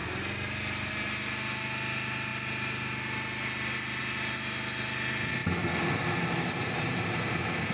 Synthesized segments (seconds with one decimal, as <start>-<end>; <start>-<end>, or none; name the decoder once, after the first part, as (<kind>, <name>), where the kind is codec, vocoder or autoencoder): none